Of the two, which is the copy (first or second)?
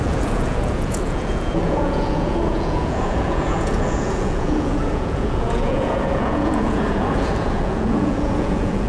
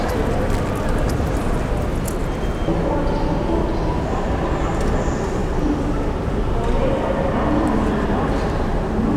first